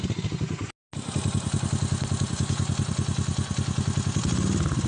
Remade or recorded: recorded